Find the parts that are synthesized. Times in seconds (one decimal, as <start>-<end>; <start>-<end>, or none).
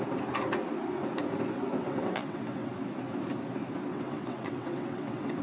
1.8-2.7; 3.9-5.4